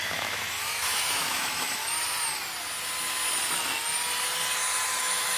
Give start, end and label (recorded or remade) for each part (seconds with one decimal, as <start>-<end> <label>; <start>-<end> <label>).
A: 0.0-1.8 remade; 1.8-5.0 recorded; 5.0-5.4 remade

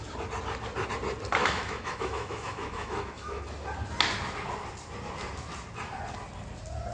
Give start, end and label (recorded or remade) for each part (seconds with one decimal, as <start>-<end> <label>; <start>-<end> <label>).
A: 0.0-1.4 recorded; 1.4-3.4 remade; 3.4-6.9 recorded